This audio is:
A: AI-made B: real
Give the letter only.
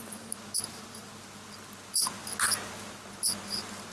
B